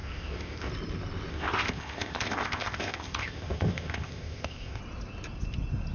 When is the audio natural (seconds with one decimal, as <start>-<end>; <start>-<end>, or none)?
0.7-1.3; 4.8-5.9